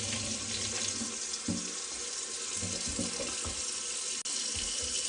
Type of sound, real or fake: real